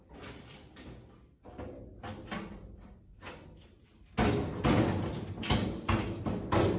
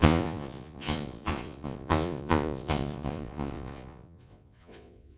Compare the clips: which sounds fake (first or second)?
second